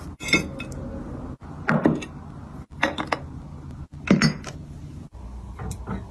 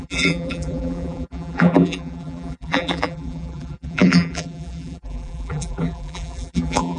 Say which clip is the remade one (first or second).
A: second